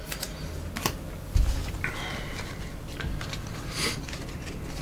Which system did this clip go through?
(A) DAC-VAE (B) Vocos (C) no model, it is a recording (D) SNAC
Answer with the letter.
C